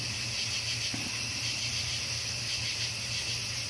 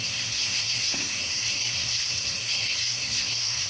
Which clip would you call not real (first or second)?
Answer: second